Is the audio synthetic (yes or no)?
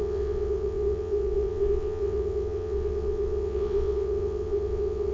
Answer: yes